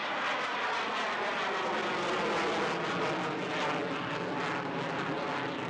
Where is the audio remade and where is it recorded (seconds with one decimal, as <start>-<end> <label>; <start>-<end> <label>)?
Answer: 0.0-5.7 recorded